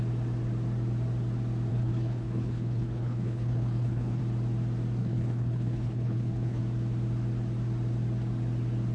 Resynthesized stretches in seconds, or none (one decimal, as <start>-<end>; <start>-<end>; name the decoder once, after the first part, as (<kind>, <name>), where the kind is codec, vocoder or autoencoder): 1.7-4.2 (codec, HILCodec); 5.0-6.6